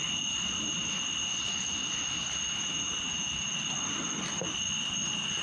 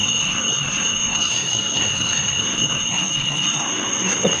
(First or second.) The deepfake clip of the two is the second